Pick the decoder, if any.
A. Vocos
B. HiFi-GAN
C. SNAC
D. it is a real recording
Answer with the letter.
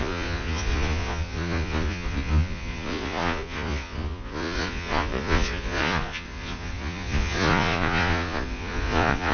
A